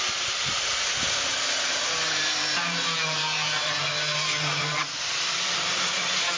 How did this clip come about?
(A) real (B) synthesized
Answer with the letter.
B